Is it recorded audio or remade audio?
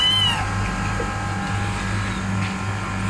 recorded